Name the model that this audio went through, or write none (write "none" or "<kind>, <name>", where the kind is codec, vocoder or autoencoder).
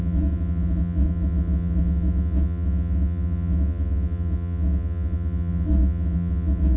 vocoder, WaveNeXt